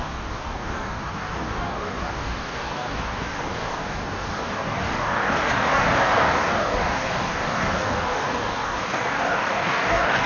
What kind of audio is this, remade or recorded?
remade